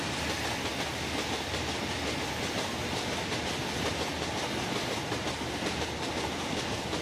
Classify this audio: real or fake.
real